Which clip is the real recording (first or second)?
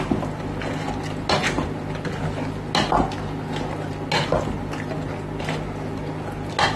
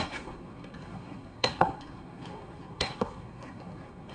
first